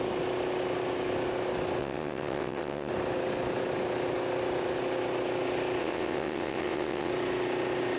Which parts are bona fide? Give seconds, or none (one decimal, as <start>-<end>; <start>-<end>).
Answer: 0.0-1.8; 2.9-5.8; 7.1-8.0